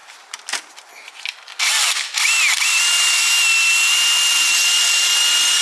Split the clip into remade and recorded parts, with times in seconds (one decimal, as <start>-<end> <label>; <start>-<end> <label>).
0.0-5.6 recorded